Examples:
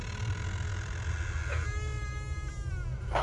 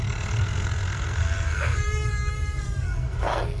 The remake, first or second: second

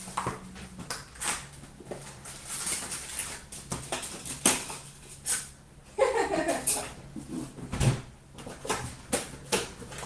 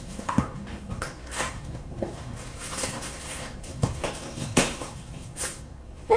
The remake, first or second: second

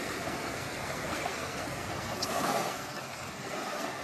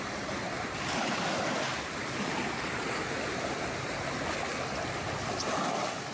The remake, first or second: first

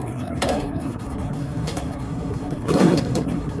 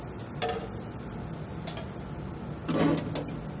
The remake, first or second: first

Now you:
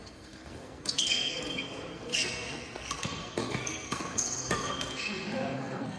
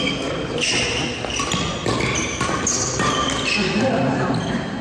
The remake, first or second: first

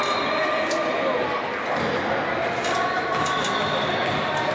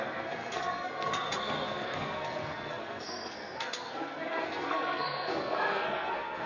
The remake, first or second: second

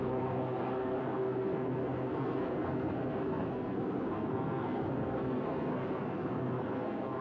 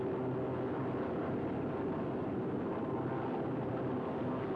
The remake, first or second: first